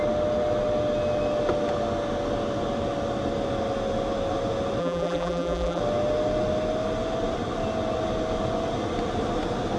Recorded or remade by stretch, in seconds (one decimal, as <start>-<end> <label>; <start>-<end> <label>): 0.0-4.8 recorded; 4.8-5.8 remade; 5.8-9.8 recorded